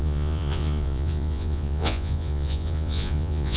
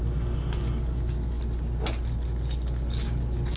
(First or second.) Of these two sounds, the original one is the second